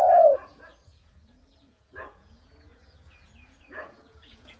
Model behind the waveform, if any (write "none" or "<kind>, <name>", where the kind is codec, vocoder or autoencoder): vocoder, Vocos